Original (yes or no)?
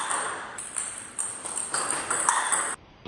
yes